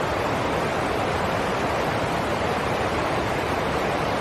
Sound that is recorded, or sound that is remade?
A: recorded